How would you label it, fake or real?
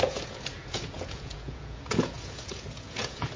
fake